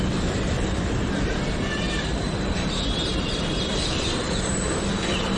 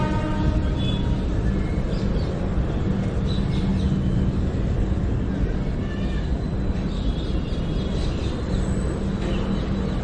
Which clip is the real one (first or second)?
second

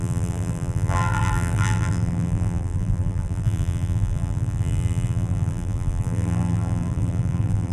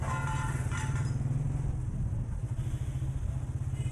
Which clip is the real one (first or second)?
second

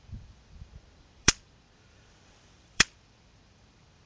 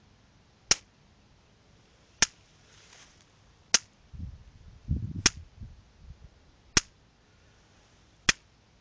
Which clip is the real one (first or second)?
second